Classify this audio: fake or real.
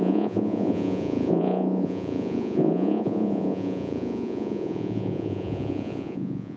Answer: fake